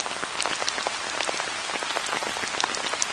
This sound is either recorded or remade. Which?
recorded